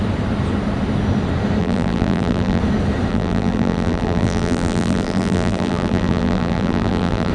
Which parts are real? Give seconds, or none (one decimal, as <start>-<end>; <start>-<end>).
0.0-1.6; 2.6-3.1